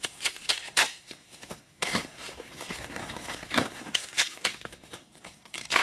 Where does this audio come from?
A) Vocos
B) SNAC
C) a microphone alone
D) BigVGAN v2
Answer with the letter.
B